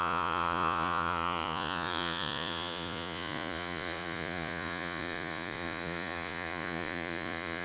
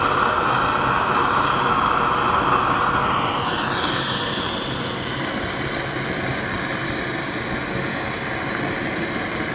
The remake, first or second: first